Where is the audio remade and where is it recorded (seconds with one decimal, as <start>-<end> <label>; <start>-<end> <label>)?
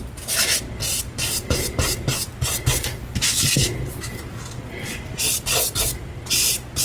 0.0-6.8 recorded